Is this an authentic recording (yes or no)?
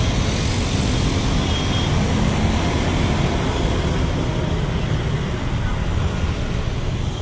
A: yes